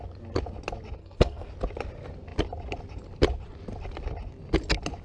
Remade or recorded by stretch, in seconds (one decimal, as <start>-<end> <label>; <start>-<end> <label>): 0.0-1.0 recorded; 1.0-1.5 remade; 1.5-5.0 recorded